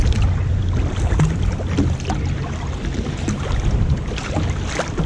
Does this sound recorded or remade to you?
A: recorded